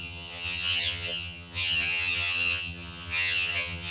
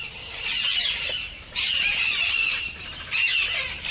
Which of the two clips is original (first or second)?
second